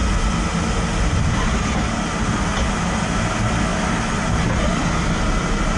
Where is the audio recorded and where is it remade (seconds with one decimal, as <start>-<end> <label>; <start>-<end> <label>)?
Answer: 0.0-3.7 recorded; 3.7-4.6 remade; 4.6-5.8 recorded